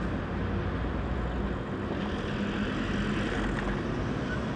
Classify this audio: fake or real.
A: real